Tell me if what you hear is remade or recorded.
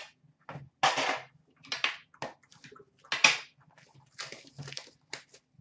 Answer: recorded